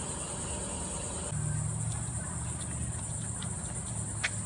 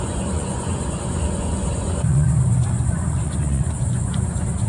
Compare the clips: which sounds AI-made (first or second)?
second